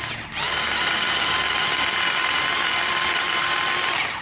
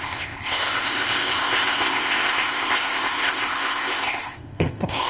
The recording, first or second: first